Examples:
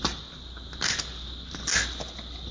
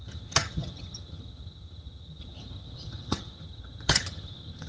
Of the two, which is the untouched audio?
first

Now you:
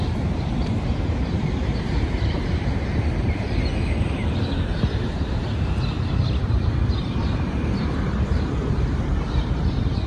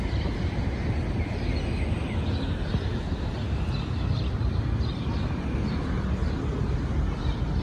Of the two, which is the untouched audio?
second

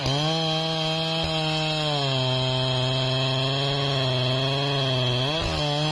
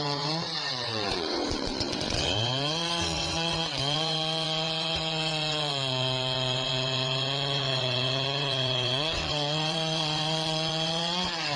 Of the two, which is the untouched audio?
first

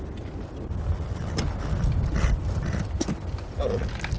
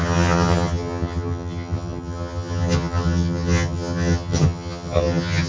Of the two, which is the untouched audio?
first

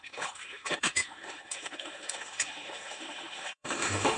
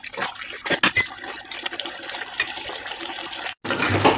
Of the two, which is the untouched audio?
second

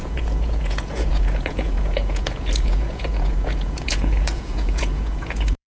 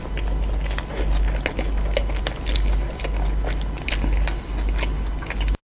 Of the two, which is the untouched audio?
second